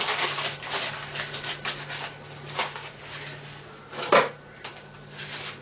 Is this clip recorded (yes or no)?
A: yes